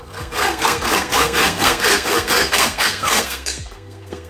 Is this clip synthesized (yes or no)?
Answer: yes